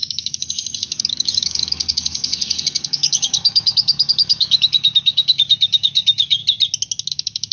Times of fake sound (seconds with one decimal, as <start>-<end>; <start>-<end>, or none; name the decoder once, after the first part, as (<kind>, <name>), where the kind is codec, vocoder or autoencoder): 0.0-6.4 (codec, DAC); 7.1-7.5

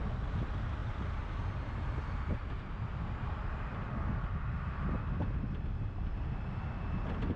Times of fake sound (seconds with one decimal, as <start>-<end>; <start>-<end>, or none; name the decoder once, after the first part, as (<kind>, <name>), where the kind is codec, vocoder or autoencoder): none

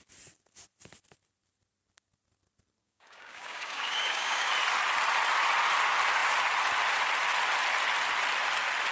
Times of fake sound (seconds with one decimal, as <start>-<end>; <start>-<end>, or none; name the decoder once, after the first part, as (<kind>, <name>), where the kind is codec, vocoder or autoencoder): 2.8-4.5 (codec, DAC)